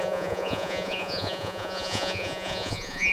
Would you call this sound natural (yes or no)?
no